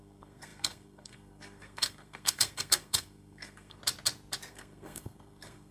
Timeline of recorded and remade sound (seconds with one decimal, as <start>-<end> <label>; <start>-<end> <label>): 0.0-3.8 remade; 3.8-4.5 recorded; 4.5-5.7 remade